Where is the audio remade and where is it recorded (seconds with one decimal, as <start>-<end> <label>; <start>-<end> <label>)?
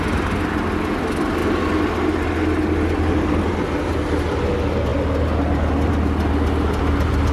0.0-7.3 recorded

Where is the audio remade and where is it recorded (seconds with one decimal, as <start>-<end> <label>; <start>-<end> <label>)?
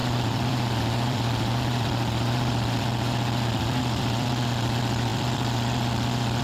0.0-6.4 remade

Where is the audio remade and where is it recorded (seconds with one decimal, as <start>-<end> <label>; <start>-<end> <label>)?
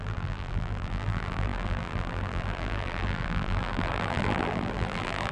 0.0-5.3 remade